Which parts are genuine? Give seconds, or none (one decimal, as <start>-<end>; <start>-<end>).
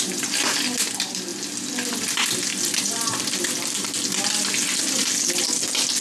0.0-2.5; 3.2-6.0